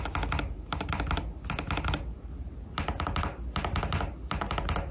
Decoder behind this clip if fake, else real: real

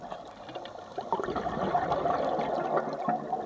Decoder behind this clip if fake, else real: real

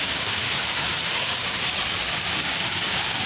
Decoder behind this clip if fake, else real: fake, codec, DAC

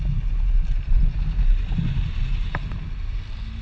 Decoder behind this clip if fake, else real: real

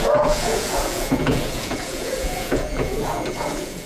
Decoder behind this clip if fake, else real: fake, vocoder, Vocos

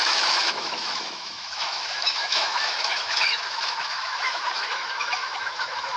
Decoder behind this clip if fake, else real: fake, autoencoder, DAC-VAE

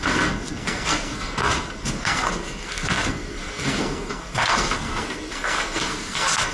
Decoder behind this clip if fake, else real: fake, codec, SNAC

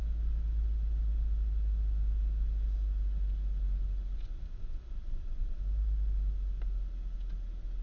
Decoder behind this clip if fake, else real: real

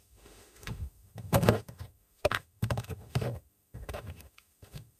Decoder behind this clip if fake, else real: fake, autoencoder, DAC-VAE